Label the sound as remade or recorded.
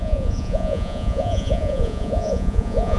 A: remade